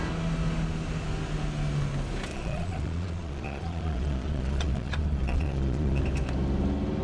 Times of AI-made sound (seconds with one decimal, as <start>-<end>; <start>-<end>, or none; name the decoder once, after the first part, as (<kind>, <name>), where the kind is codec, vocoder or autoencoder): 2.3-6.0 (vocoder, Vocos)